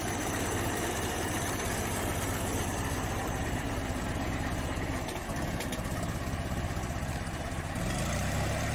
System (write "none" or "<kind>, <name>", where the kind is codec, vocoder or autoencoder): vocoder, BigVGAN v2